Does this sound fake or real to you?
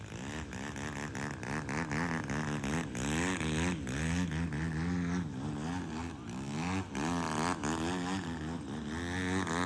real